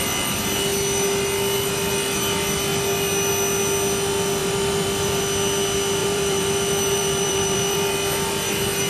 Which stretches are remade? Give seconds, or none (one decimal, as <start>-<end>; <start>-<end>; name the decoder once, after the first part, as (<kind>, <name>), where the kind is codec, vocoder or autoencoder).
4.4-5.2 (vocoder, BigVGAN v2); 6.0-7.9

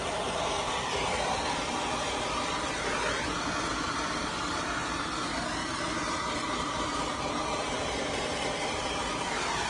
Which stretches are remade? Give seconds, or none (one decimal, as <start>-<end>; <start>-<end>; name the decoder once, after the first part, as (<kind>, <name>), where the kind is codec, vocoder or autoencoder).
0.0-9.7 (vocoder, BigVGAN v2)

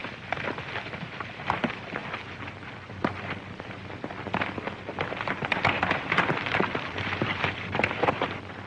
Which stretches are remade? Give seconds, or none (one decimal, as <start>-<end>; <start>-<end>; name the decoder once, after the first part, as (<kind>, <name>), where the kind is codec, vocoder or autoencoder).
0.0-2.0 (vocoder, BigVGAN v2); 5.6-8.7

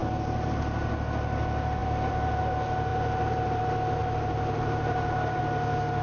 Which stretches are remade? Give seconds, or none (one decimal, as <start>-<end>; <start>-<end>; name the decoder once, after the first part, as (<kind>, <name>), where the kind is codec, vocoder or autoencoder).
1.8-2.4 (vocoder, BigVGAN v2); 2.9-3.6; 4.0-5.4

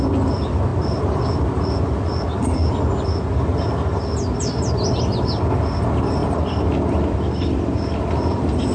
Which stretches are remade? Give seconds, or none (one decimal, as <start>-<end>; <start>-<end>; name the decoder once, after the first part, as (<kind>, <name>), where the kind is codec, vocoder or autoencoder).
0.7-1.2 (vocoder, BigVGAN v2)